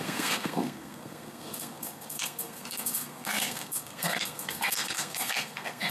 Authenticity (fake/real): fake